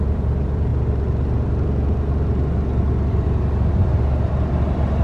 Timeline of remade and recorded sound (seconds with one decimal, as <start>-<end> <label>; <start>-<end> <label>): 0.0-0.7 remade; 0.7-3.1 recorded; 3.1-5.0 remade